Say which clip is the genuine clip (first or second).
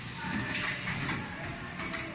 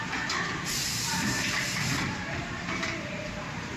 first